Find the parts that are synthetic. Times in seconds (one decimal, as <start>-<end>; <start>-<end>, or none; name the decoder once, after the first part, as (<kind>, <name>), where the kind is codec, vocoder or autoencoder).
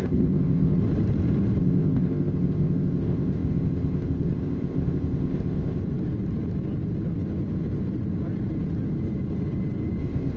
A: 0.0-0.8 (codec, ZipCodec); 1.6-5.8; 10.0-10.4